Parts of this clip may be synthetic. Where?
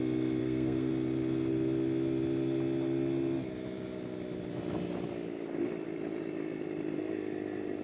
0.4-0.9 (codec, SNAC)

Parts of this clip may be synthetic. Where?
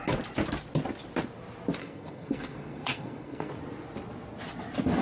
1.8-3.5 (codec, SNAC)